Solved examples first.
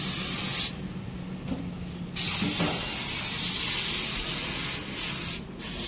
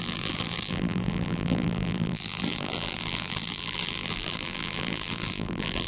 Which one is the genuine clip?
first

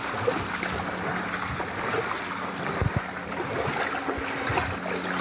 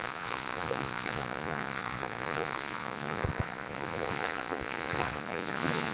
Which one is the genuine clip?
first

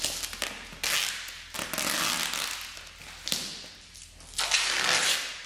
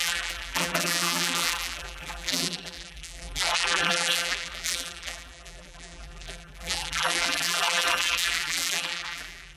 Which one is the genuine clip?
first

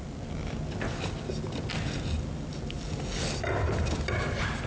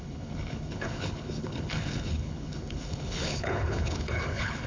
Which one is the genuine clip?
first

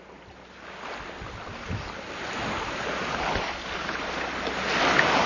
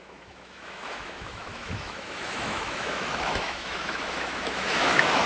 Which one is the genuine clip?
first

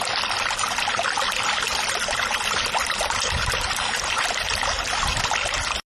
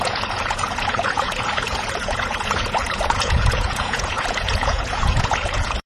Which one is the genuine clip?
first